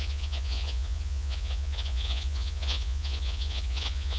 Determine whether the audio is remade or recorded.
remade